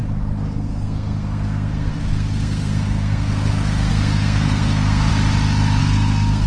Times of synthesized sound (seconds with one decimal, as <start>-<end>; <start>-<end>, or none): 0.0-5.1; 5.8-6.5